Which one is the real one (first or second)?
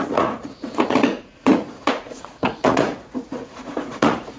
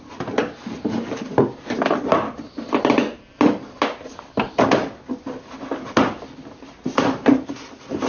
second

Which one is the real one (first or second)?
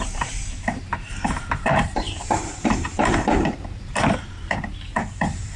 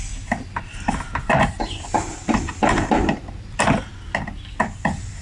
second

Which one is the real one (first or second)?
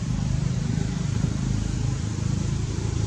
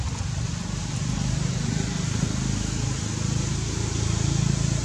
second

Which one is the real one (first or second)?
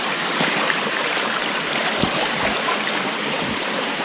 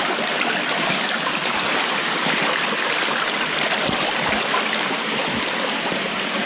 second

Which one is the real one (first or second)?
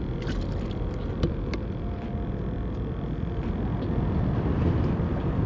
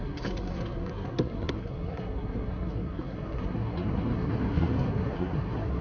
first